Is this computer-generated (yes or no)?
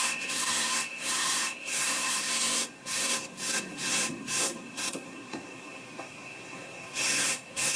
yes